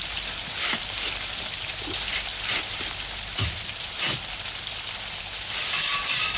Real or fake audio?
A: fake